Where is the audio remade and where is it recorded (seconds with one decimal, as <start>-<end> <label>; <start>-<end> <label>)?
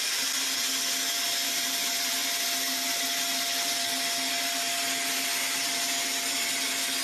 0.0-1.4 recorded; 1.4-2.4 remade; 2.4-7.0 recorded